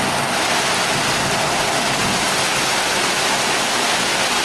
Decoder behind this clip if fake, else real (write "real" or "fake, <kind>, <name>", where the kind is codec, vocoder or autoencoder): real